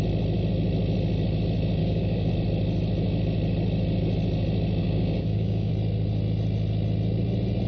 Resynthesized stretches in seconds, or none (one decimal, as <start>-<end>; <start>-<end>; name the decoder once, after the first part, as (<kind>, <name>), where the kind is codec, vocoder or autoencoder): 1.8-2.3 (codec, DAC); 4.8-5.7